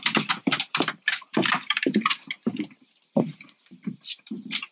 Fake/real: fake